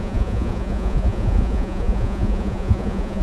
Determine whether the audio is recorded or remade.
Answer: remade